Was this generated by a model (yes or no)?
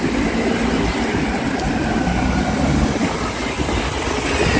no